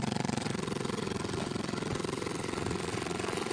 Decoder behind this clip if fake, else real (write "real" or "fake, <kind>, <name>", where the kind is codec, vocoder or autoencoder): fake, vocoder, Vocos